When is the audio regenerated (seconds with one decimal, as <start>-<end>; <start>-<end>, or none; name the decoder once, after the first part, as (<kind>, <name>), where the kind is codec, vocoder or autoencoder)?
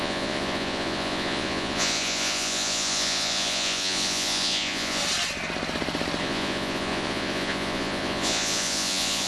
0.0-5.0 (vocoder, Vocos); 6.2-9.3